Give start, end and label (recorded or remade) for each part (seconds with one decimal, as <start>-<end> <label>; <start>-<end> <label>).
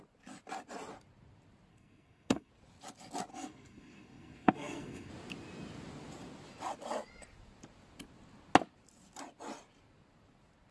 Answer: 0.0-1.7 recorded; 1.7-2.5 remade; 2.5-3.3 recorded; 3.3-5.1 remade; 5.1-10.7 recorded